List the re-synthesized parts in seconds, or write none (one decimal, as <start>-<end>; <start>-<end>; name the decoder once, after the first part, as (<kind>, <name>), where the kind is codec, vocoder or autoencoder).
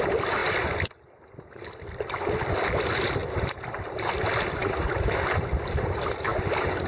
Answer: 3.2-4.1 (vocoder, BigVGAN v2)